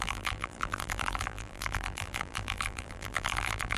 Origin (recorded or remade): remade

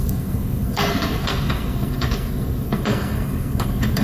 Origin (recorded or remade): remade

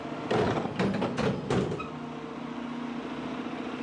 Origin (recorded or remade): recorded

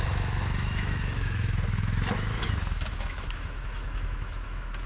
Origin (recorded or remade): remade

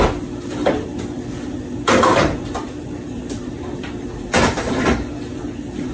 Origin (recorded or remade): remade